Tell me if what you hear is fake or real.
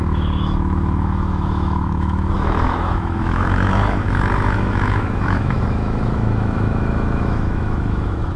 fake